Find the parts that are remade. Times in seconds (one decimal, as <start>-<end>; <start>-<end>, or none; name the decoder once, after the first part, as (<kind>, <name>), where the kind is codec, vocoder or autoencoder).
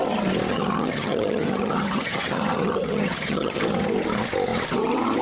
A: 0.5-3.6 (vocoder, HiFi-GAN)